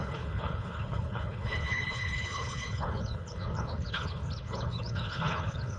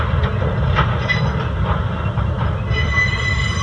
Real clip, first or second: second